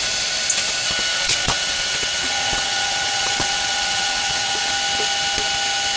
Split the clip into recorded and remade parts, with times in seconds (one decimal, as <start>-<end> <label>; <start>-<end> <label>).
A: 0.0-1.1 recorded; 1.1-4.7 remade; 4.7-6.0 recorded